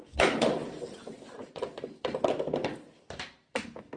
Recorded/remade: recorded